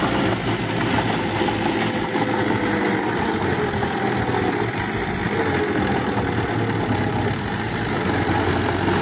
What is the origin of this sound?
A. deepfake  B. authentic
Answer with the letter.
B